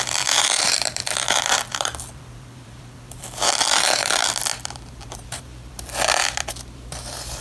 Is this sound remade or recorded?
remade